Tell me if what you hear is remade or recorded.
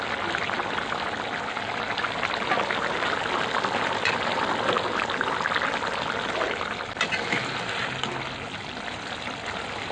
recorded